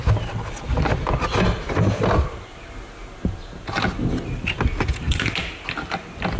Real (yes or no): yes